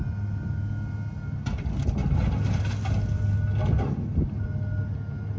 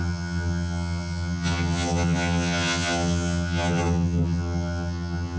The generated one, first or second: second